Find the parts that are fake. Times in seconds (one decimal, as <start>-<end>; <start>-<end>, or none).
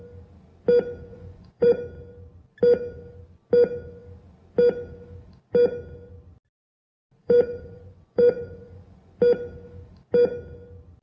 1.1-1.7; 7.2-9.2